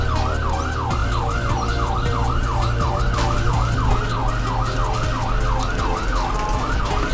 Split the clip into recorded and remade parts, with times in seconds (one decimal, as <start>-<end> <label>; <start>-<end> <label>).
0.0-1.0 recorded; 1.0-3.5 remade; 3.5-7.1 recorded